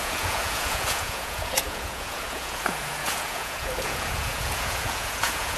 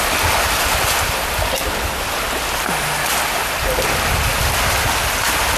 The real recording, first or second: second